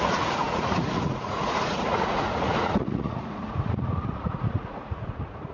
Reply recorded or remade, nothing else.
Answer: remade